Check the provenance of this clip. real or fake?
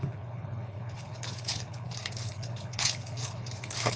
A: fake